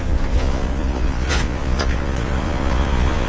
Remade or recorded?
remade